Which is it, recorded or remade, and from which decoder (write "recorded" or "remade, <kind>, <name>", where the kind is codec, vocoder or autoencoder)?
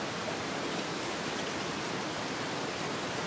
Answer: recorded